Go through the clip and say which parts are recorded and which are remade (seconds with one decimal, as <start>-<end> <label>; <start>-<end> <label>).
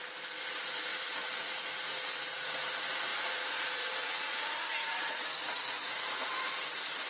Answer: 0.0-0.9 recorded; 0.9-2.6 remade; 2.6-3.1 recorded; 3.1-6.6 remade; 6.6-7.1 recorded